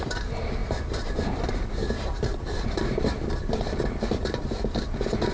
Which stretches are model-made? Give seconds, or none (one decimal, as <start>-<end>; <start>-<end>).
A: 0.6-3.8